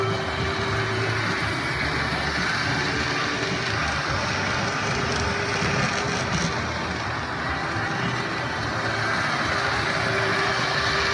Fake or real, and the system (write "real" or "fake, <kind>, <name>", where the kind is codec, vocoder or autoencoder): real